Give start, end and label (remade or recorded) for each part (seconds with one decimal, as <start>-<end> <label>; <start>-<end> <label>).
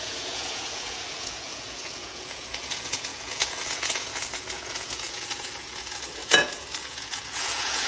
0.0-7.9 remade